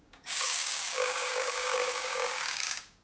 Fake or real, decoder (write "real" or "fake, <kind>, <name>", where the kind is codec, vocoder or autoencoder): fake, codec, DAC